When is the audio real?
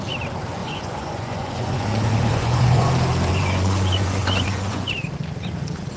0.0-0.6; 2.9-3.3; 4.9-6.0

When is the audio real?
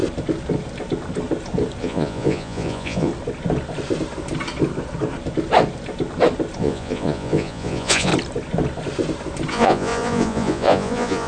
0.0-1.8; 3.1-6.6; 8.1-9.5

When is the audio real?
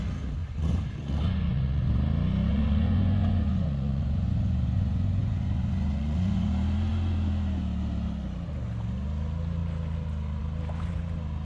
0.0-0.4; 1.9-2.5; 6.5-11.4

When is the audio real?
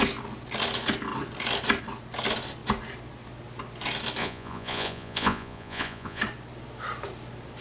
0.0-4.2; 6.2-7.6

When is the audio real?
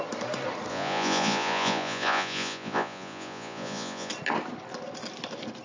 0.0-0.7; 4.1-5.6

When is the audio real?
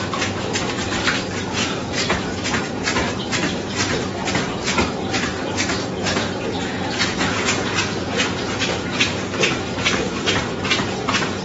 0.0-1.6; 2.6-6.6; 9.0-11.4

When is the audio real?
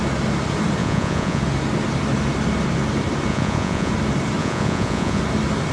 0.0-0.8; 1.4-3.3; 3.9-4.4; 5.2-5.7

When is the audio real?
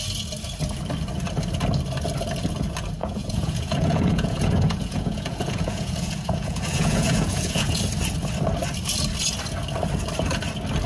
0.0-3.0; 7.8-10.9